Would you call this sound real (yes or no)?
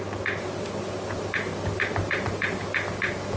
yes